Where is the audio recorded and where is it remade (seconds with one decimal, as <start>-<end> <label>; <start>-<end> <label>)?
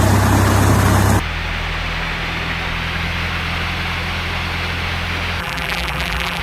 0.0-5.4 recorded; 5.4-6.4 remade